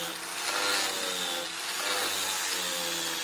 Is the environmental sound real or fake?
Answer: real